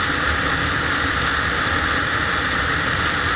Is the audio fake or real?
real